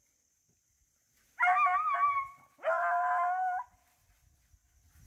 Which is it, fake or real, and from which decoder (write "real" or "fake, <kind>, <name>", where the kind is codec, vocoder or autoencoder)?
real